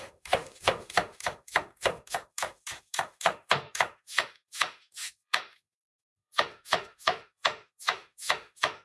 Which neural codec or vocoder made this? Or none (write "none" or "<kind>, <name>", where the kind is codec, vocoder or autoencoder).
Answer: autoencoder, DAC-VAE